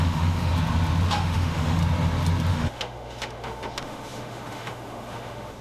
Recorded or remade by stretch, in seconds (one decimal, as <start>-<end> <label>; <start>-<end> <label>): 0.0-0.5 remade; 0.5-1.1 recorded; 1.1-1.8 remade; 1.8-2.5 recorded; 2.5-5.6 remade